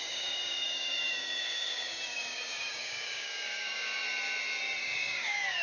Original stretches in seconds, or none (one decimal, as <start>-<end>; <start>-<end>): 4.0-4.8